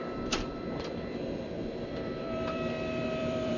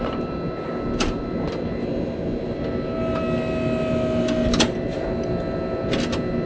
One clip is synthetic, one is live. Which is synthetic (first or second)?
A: first